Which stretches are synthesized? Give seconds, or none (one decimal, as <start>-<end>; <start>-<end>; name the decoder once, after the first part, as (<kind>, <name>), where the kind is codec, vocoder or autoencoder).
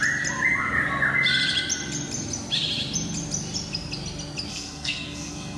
4.5-5.6 (codec, SNAC)